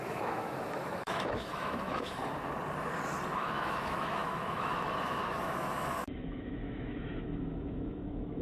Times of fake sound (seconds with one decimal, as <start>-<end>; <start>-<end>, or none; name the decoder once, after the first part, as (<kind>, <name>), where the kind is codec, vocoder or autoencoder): 0.0-2.2 (autoencoder, DAC-VAE); 3.3-8.4